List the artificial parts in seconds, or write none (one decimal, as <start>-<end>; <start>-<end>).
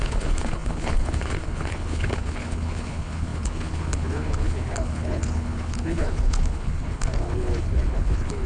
0.0-8.5